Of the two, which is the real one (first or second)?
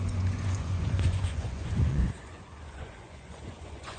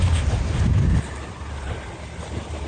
second